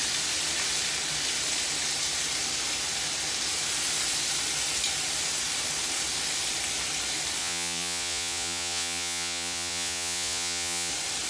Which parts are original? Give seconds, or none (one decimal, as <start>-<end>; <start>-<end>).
0.0-7.4; 10.9-11.3